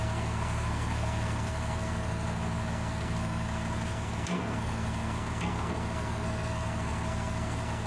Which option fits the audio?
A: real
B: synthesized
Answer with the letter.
B